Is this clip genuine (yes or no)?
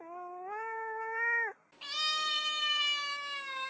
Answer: yes